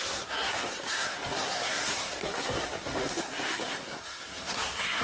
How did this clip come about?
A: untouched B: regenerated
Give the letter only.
B